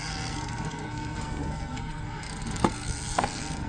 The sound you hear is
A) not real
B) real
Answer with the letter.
A